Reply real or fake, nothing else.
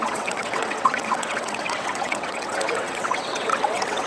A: fake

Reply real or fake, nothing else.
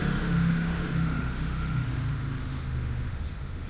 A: fake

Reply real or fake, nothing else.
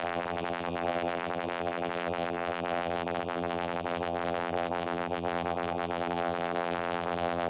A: fake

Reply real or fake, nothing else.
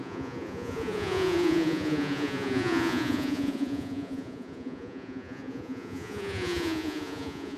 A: fake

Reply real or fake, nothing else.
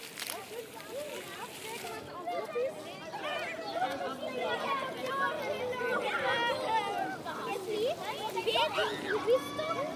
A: real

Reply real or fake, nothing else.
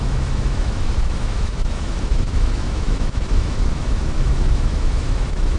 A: fake